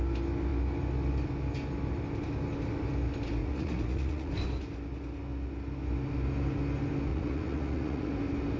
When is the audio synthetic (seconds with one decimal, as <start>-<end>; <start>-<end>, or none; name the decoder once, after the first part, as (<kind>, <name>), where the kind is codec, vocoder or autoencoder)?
3.4-4.3 (vocoder, Vocos); 7.1-8.1